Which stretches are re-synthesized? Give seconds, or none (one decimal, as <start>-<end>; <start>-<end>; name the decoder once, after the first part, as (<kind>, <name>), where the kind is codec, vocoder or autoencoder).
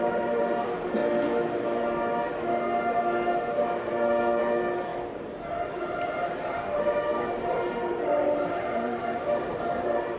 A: 0.0-1.0 (vocoder, BigVGAN v2); 4.4-4.9; 5.7-10.2